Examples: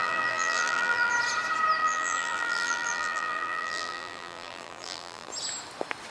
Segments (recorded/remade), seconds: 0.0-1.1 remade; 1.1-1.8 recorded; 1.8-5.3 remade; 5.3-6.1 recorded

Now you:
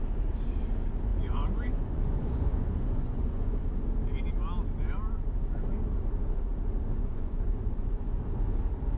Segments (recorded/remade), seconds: 0.0-1.1 recorded; 1.1-3.6 remade; 3.6-7.0 recorded; 7.0-8.2 remade; 8.2-9.0 recorded

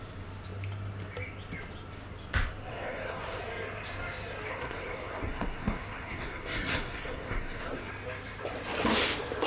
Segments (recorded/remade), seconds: 0.0-2.7 recorded; 2.7-3.4 remade; 3.4-4.5 recorded; 4.5-7.9 remade; 7.9-9.5 recorded

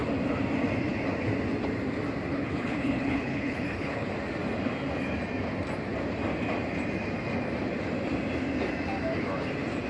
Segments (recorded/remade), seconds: 0.0-2.3 recorded; 2.3-4.1 remade; 4.1-9.9 recorded

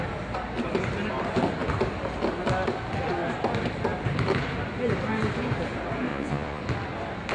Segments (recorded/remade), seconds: 0.0-6.1 recorded; 6.1-6.6 remade; 6.6-7.3 recorded

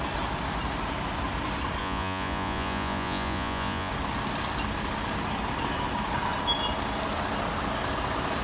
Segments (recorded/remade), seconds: 0.0-1.8 recorded; 1.8-3.9 remade; 3.9-8.4 recorded

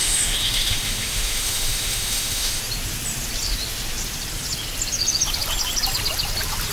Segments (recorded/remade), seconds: 0.0-2.6 remade; 2.6-6.7 recorded